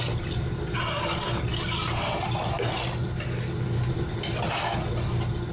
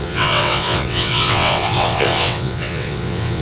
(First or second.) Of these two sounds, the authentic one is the first